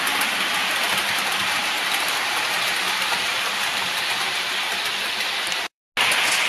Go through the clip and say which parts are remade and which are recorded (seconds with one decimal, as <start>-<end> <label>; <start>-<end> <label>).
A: 0.0-0.6 recorded; 0.6-4.1 remade; 4.1-5.1 recorded; 5.1-5.8 remade; 5.8-6.5 recorded